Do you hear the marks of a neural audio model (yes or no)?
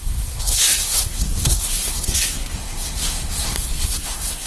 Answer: yes